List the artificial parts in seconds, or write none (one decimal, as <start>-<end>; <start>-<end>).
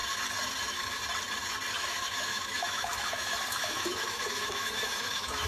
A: 0.6-1.0; 1.7-5.5